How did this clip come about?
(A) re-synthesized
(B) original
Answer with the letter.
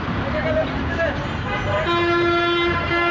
A